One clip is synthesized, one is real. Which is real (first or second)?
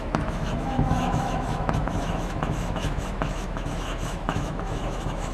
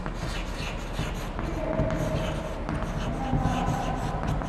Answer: second